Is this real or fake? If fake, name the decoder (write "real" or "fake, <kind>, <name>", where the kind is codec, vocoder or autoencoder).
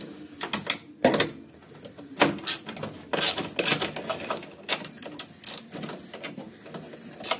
real